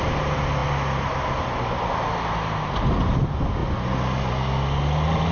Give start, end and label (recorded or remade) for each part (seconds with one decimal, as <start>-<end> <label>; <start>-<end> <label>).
0.0-5.3 recorded